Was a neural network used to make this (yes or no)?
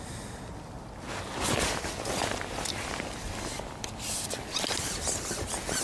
no